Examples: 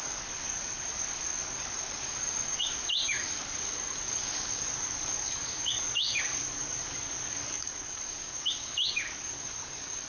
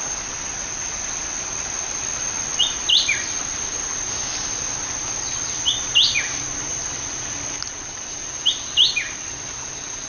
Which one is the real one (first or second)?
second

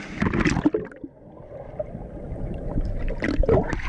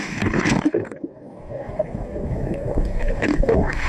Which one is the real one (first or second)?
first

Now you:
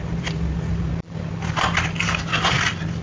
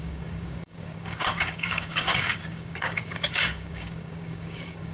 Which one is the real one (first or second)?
first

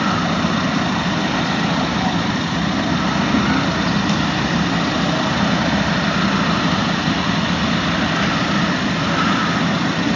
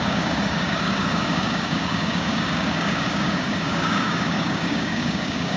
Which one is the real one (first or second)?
first